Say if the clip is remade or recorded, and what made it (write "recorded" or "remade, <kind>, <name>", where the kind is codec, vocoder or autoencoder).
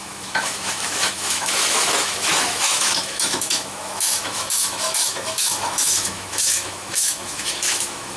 remade, autoencoder, DAC-VAE